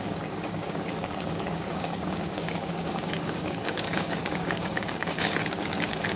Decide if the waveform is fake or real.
fake